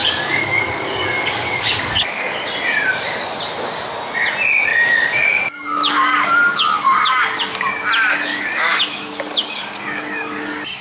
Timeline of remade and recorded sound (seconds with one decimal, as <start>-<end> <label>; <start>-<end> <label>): 0.0-2.4 remade; 2.4-4.7 recorded; 4.7-7.4 remade; 7.4-8.3 recorded; 8.3-10.8 remade